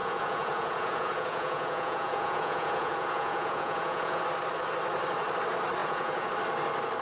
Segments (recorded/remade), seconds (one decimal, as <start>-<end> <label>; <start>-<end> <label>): 0.0-4.2 remade; 4.2-5.8 recorded; 5.8-6.3 remade; 6.3-7.0 recorded